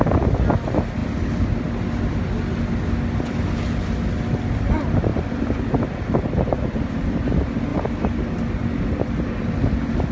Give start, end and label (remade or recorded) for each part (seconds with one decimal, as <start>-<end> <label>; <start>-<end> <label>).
0.0-5.1 recorded; 5.1-7.0 remade; 7.0-10.1 recorded

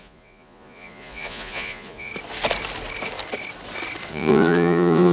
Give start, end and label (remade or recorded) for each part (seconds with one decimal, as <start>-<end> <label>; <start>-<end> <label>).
0.0-2.1 remade; 2.1-4.1 recorded; 4.1-5.1 remade